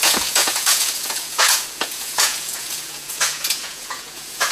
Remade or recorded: remade